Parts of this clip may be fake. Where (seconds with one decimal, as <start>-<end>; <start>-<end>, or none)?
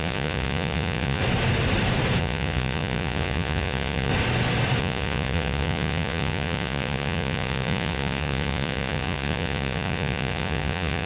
0.0-1.2; 2.2-4.1; 4.8-11.1